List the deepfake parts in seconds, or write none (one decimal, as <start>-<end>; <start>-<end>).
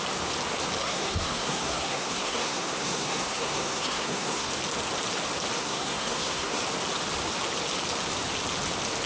0.8-4.5; 5.6-6.6